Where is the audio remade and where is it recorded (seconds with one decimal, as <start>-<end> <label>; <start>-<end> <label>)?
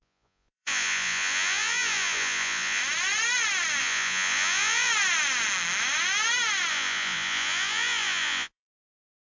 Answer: 0.0-2.8 remade; 2.8-3.8 recorded; 3.8-4.9 remade; 4.9-6.7 recorded; 6.7-9.3 remade